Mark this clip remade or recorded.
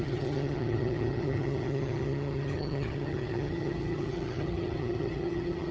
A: remade